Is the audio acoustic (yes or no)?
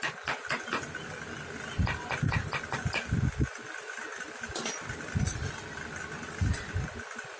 yes